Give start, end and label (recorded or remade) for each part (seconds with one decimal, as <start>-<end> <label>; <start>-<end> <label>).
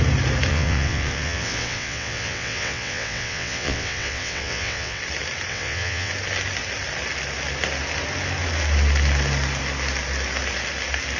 0.0-0.5 recorded; 0.5-5.0 remade; 5.0-5.5 recorded; 5.5-6.1 remade; 6.1-11.2 recorded